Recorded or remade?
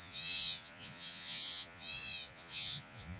remade